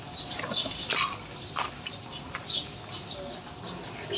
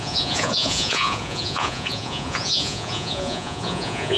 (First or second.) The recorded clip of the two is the first